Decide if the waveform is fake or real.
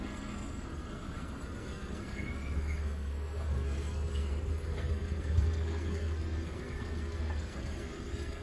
fake